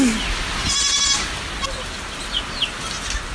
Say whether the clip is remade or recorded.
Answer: recorded